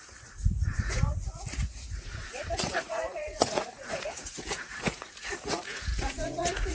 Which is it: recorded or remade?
remade